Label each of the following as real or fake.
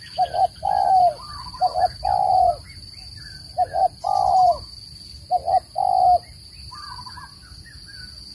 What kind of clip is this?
real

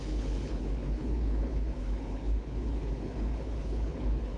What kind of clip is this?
fake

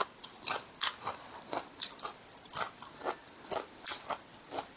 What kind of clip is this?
real